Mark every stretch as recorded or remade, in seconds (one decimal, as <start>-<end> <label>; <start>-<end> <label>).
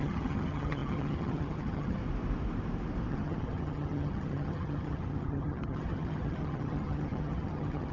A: 0.0-2.0 remade; 2.0-3.1 recorded; 3.1-7.9 remade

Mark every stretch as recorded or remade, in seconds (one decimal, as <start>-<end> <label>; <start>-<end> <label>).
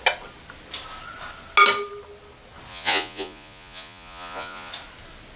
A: 0.0-2.7 recorded; 2.7-4.7 remade; 4.7-5.4 recorded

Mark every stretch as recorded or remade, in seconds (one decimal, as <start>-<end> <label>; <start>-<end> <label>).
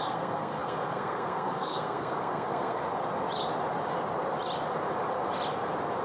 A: 0.0-2.8 remade; 2.8-6.0 recorded